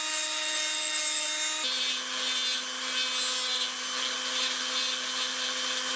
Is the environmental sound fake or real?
real